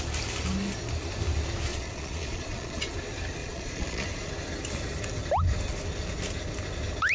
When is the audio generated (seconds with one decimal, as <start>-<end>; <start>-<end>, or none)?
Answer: 1.7-2.9; 3.4-4.3